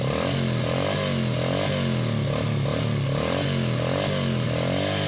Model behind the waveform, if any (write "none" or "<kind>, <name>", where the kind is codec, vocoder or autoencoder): none